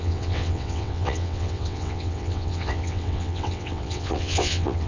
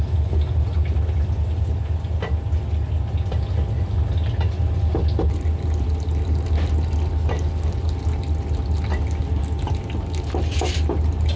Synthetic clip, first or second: first